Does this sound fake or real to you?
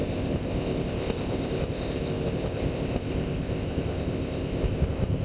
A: fake